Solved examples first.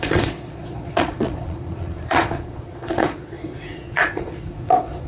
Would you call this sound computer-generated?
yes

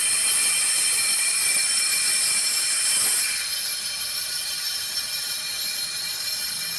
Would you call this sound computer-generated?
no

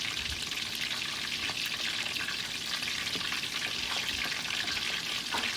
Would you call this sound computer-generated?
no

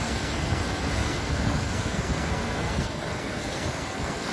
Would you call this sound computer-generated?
yes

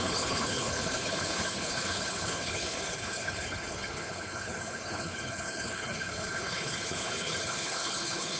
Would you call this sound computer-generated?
yes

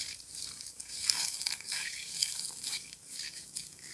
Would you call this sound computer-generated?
yes